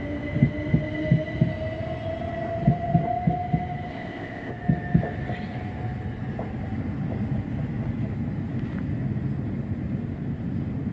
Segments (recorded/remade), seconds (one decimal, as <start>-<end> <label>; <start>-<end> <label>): 0.0-3.9 recorded; 3.9-4.5 remade; 4.5-10.9 recorded